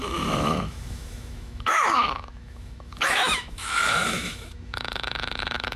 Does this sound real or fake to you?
fake